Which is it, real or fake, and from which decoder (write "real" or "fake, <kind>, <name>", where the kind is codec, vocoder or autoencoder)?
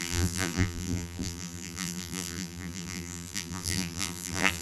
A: fake, vocoder, BigVGAN v2